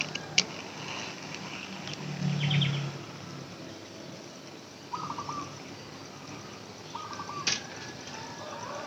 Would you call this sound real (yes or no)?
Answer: yes